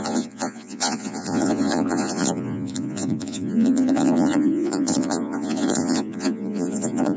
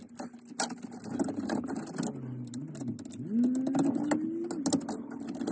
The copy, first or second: first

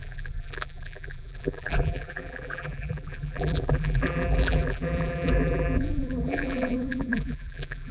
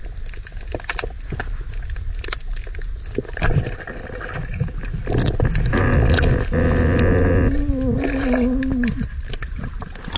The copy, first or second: first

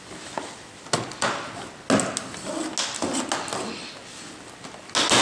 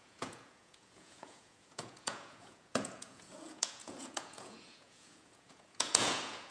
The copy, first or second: second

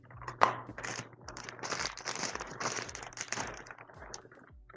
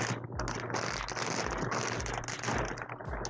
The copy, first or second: first